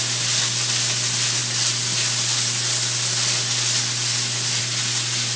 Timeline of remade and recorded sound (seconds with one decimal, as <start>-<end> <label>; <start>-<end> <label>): 0.0-5.4 recorded